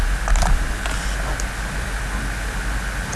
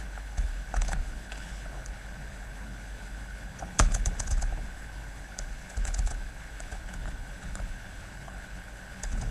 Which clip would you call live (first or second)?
first